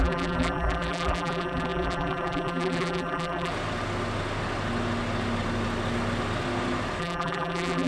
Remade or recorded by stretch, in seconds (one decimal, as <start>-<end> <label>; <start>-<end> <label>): 0.0-3.5 remade; 3.5-7.0 recorded; 7.0-7.9 remade